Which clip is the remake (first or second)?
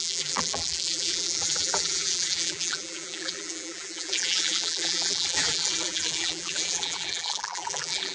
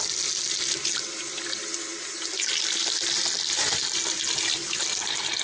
first